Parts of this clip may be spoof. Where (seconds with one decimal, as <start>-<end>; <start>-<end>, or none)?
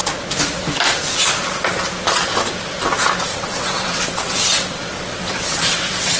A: 3.3-6.2